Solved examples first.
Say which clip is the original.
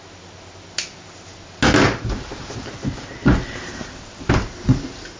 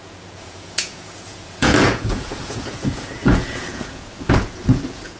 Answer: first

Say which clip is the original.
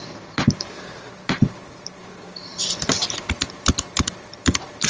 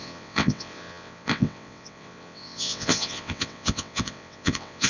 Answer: first